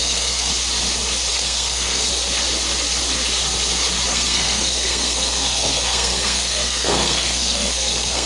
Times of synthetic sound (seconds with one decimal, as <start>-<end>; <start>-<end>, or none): 0.0-0.5; 1.3-2.1; 4.1-8.3